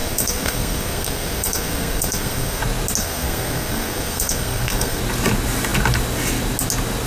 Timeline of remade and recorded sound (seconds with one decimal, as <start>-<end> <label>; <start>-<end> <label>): 0.0-2.6 remade; 2.6-3.0 recorded; 3.0-5.0 remade; 5.0-7.1 recorded